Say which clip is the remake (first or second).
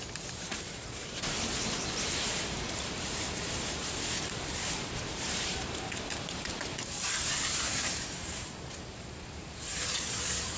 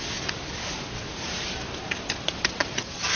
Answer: first